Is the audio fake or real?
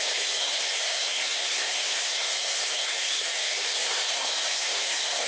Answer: fake